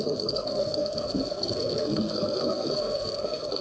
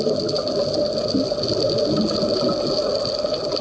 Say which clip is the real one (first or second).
second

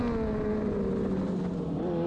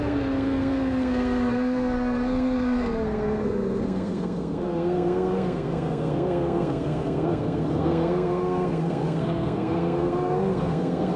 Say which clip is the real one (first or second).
first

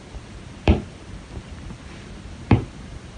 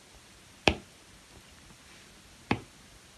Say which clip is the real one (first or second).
second